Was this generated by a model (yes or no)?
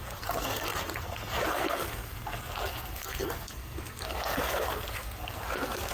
yes